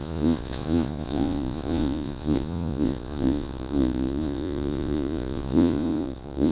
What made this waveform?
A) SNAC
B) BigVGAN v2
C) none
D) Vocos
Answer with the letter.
D